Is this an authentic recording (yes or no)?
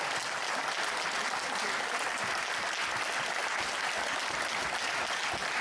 yes